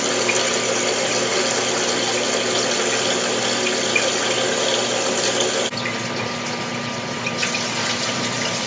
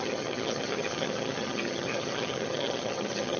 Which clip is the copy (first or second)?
second